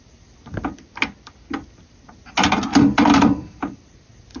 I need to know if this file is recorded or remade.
recorded